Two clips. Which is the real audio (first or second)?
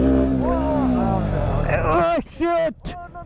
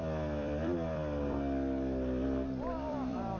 first